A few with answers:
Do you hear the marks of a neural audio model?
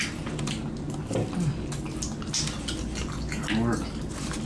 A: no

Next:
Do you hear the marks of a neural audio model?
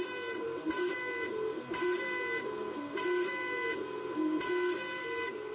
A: no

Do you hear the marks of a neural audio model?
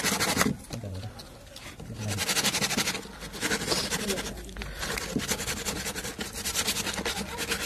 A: no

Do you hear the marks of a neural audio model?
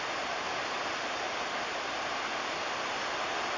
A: no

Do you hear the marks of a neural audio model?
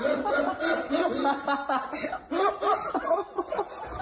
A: no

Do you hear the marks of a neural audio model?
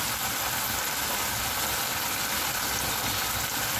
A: no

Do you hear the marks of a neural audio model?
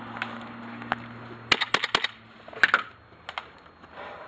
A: no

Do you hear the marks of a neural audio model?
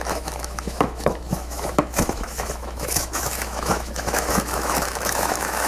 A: yes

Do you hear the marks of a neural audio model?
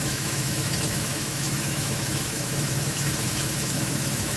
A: yes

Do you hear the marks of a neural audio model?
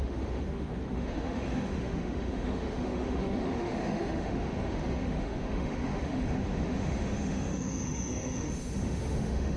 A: yes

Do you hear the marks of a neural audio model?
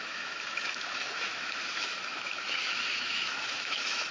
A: yes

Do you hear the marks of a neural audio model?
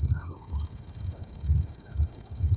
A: yes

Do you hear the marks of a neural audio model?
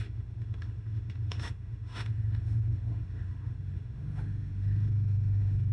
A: yes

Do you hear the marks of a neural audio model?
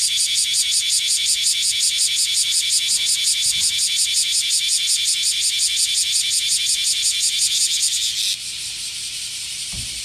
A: no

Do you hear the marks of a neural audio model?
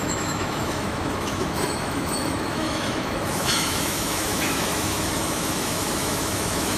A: yes